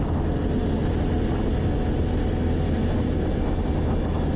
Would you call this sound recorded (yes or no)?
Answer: yes